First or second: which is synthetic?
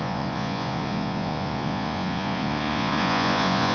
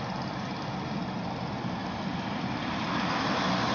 first